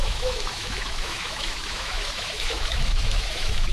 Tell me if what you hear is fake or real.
fake